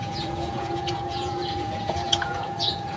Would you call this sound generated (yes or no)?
yes